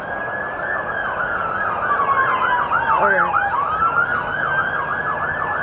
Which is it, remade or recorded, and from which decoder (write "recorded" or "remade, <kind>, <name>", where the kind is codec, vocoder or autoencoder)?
recorded